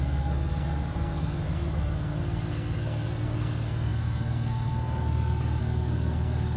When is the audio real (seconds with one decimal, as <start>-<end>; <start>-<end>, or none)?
none